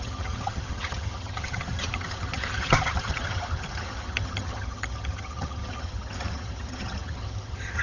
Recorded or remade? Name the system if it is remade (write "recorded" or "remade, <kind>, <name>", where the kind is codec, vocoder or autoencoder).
remade, vocoder, HiFi-GAN